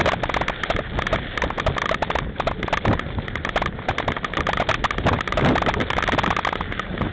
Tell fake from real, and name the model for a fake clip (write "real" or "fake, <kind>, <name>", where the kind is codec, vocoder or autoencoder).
real